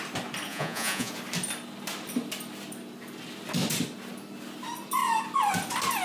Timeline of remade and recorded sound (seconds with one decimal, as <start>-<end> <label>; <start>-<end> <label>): 0.0-0.5 recorded; 0.5-1.1 remade; 1.1-6.0 recorded